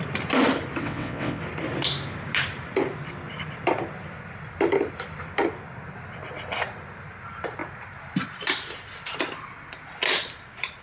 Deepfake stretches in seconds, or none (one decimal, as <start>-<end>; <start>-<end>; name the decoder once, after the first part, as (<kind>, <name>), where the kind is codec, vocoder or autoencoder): 0.8-1.4 (vocoder, WaveNeXt)